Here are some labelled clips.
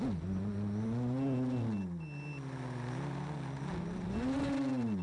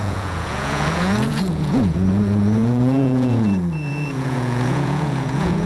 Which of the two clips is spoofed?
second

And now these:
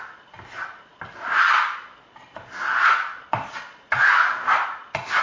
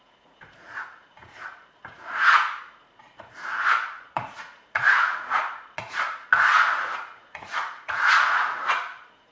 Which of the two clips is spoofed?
second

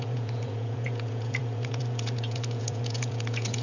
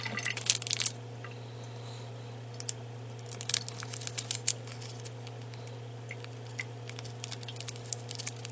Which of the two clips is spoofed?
first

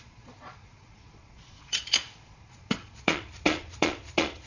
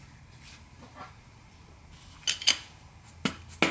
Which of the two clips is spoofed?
first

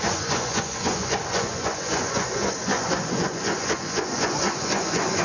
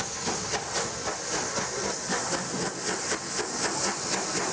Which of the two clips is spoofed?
first